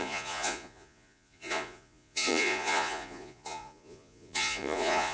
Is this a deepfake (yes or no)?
yes